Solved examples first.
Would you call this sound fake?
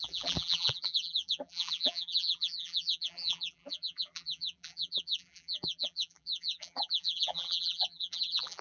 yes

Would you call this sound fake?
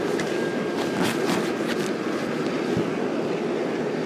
no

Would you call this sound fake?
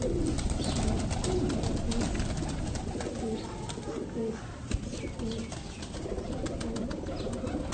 no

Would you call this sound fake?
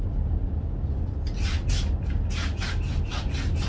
no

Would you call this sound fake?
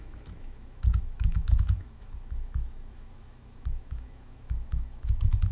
yes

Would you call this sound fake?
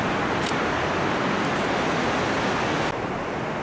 no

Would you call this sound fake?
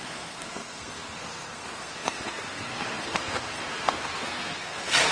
yes